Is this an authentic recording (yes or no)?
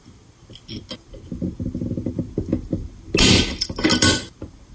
yes